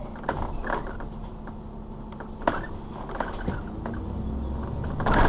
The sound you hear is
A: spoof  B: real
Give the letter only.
B